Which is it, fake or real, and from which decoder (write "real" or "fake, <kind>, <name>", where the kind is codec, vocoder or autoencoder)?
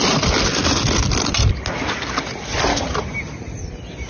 real